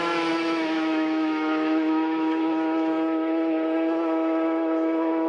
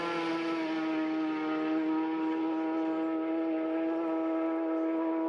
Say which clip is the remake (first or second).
first